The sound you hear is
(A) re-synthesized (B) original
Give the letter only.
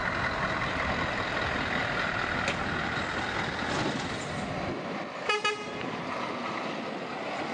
B